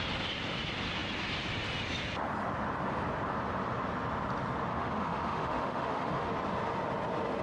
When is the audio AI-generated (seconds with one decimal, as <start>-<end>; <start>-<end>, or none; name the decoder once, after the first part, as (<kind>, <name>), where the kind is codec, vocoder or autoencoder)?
4.7-6.3 (autoencoder, DAC-VAE)